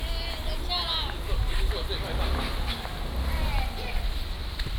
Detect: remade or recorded recorded